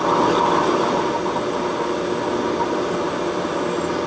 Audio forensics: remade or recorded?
recorded